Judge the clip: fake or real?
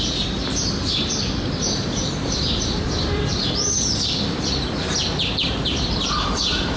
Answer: fake